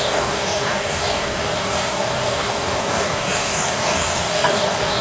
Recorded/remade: remade